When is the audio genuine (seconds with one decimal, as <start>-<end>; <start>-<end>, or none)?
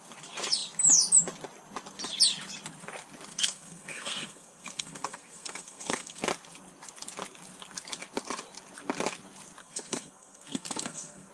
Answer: 0.0-3.3; 6.2-9.6